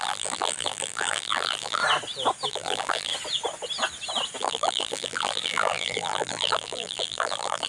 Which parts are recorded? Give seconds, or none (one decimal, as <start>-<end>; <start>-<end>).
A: 1.8-2.5; 3.1-4.4